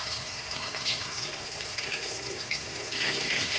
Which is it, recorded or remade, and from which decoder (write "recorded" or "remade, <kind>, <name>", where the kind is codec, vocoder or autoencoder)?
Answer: remade, codec, SNAC